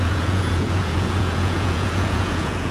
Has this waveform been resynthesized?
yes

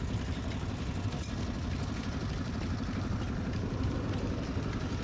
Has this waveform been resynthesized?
no